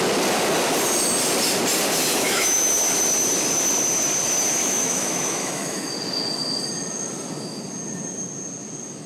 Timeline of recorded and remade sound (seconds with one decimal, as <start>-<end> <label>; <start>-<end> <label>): 0.0-2.1 recorded; 2.1-2.7 remade; 2.7-4.6 recorded; 4.6-5.9 remade; 5.9-9.1 recorded